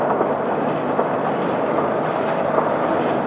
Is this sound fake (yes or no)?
yes